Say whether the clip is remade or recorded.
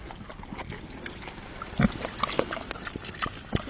recorded